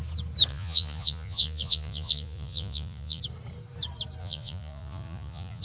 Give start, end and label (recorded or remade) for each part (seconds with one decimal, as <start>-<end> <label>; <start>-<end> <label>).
0.0-0.5 recorded; 0.5-3.2 remade; 3.2-4.2 recorded; 4.2-5.6 remade